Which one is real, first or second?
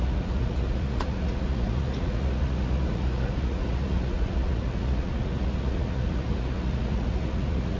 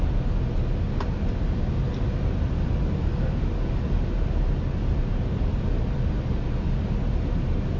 second